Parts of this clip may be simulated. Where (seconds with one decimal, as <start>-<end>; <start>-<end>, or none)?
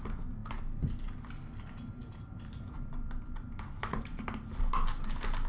none